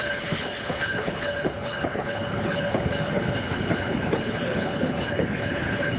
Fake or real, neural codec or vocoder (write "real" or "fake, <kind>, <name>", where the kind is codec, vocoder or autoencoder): fake, codec, HILCodec